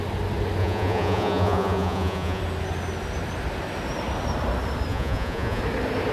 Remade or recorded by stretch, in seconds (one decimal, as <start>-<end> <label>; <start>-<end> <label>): 0.0-0.6 recorded; 0.6-2.4 remade; 2.4-4.9 recorded; 4.9-5.6 remade; 5.6-6.1 recorded